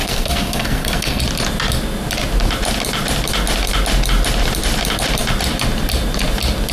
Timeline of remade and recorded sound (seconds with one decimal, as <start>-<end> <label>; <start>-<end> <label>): 0.0-1.2 remade; 1.2-6.7 recorded